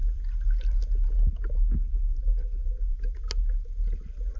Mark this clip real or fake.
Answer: real